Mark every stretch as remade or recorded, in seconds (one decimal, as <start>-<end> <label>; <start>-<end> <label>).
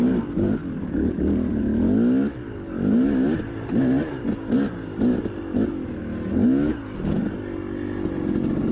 0.0-8.7 recorded